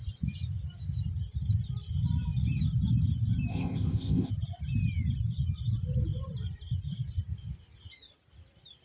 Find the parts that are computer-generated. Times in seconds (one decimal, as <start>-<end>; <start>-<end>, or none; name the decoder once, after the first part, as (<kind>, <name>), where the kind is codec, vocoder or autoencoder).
3.5-4.3 (codec, ZipCodec)